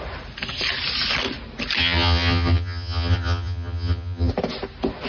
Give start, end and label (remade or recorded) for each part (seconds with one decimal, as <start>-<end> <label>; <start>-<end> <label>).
0.0-1.8 recorded; 1.8-4.3 remade; 4.3-5.1 recorded